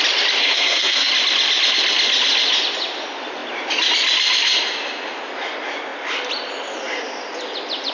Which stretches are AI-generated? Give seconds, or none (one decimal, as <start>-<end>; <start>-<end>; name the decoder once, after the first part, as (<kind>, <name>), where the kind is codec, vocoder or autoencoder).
0.4-1.1 (codec, SNAC)